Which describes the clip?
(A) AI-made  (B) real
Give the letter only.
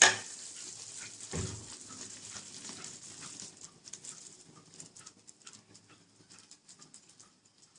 A